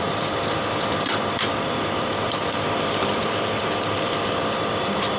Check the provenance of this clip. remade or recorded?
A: remade